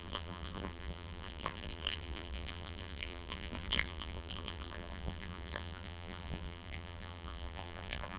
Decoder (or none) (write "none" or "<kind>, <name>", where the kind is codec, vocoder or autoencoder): vocoder, BigVGAN v2